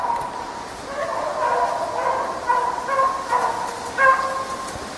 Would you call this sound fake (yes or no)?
no